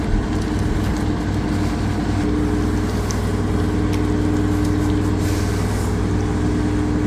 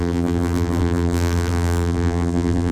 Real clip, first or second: first